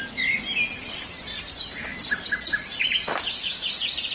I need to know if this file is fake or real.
real